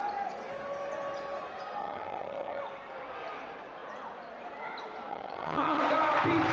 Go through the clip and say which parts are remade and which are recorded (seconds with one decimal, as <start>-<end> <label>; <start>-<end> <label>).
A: 0.0-1.8 recorded; 1.8-2.6 remade; 2.6-5.1 recorded; 5.1-5.8 remade; 5.8-6.5 recorded